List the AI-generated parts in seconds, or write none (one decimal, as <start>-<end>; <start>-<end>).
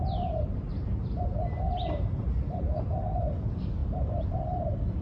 0.0-5.0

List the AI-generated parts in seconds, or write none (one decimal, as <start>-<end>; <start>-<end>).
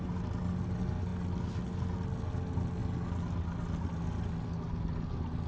none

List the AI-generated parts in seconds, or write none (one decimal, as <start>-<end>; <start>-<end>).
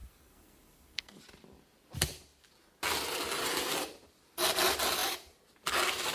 0.0-1.2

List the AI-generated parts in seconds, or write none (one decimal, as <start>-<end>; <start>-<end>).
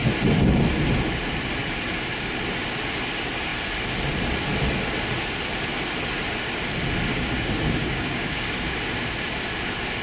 7.1-8.8